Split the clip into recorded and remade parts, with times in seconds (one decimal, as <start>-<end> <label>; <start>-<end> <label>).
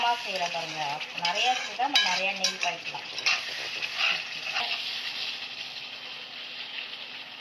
0.0-7.4 recorded